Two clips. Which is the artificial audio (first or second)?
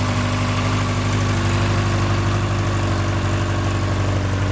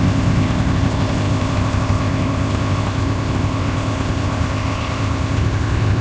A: second